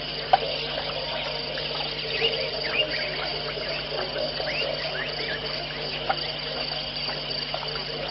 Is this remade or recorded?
recorded